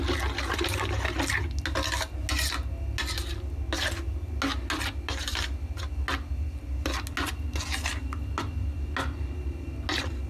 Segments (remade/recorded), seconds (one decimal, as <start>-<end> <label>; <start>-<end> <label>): 0.0-10.3 recorded